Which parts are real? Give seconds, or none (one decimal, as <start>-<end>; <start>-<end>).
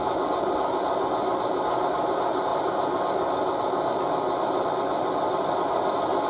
0.0-6.3